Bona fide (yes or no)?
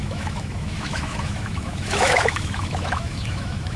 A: no